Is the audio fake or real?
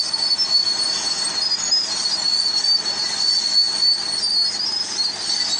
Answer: real